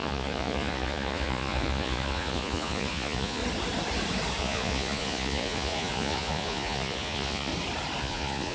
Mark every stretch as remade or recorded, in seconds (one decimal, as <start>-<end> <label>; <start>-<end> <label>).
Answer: 0.0-3.4 remade; 3.4-4.4 recorded; 4.4-7.5 remade; 7.5-8.0 recorded; 8.0-8.5 remade